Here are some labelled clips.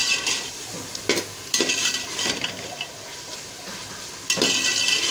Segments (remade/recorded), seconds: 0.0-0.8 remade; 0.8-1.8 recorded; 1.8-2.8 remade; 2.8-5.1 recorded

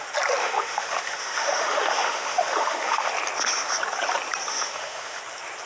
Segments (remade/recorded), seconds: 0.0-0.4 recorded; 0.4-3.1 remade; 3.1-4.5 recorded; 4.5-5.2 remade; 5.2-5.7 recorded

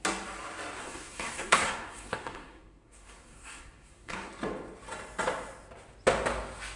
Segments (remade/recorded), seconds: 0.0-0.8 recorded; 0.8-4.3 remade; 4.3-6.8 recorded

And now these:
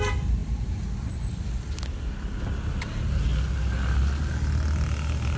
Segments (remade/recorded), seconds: 0.0-5.4 recorded

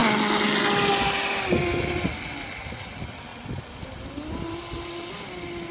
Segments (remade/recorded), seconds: 0.0-5.7 recorded

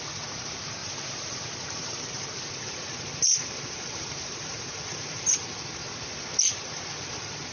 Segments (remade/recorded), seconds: 0.0-0.8 recorded; 0.8-5.3 remade; 5.3-7.5 recorded

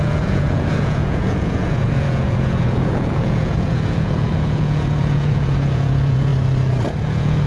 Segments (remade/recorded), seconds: 0.0-6.3 remade; 6.3-7.0 recorded; 7.0-7.5 remade

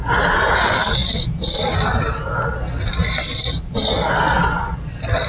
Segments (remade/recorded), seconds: 0.0-5.3 recorded